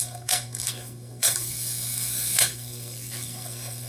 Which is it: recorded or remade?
remade